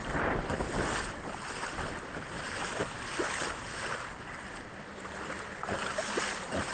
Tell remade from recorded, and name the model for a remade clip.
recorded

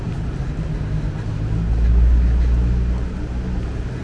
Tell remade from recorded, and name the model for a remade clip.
recorded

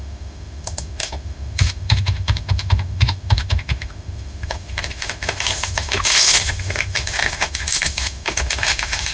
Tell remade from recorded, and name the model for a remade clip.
remade, autoencoder, DAC-VAE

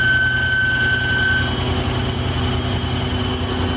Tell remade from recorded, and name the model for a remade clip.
recorded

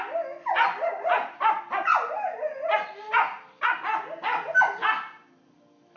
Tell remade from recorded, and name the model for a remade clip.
recorded